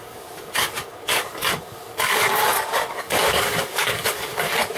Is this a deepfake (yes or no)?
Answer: yes